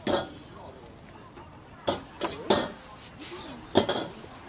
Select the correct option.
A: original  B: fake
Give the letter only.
A